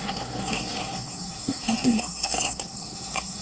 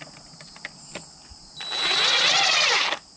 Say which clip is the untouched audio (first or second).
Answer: second